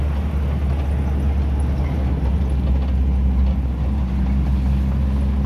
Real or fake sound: real